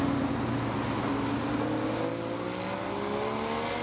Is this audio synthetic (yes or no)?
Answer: no